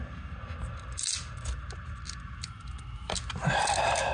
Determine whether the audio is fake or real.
real